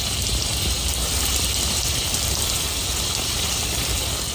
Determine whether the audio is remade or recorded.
recorded